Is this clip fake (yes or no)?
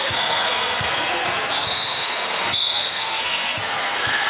yes